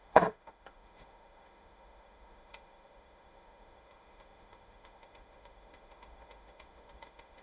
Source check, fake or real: fake